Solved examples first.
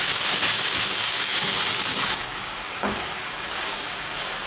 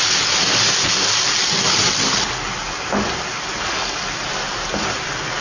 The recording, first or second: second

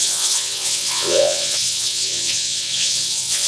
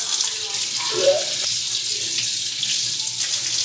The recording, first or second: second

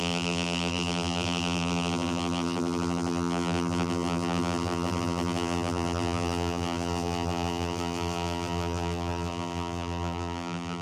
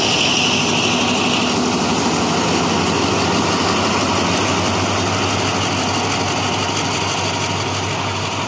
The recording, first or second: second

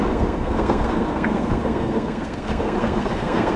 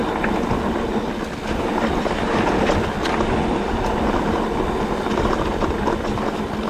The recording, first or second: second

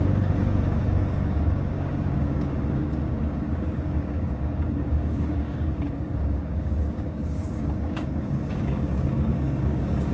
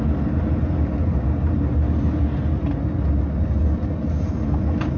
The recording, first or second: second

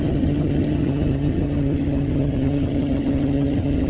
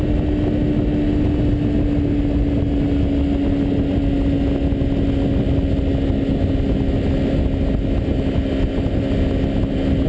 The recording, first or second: second